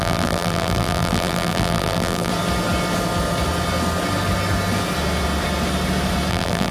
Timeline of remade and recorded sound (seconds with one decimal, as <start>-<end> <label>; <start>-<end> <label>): 0.0-2.3 remade; 2.3-6.3 recorded; 6.3-6.7 remade